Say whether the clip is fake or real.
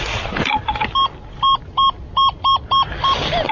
real